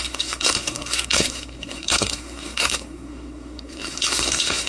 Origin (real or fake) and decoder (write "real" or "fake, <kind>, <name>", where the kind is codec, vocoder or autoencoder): fake, codec, SNAC